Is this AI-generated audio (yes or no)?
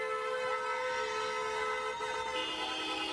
no